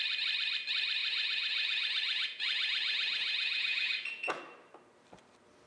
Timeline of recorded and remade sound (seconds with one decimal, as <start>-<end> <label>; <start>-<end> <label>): 0.0-1.0 recorded; 1.0-4.4 remade; 4.4-5.7 recorded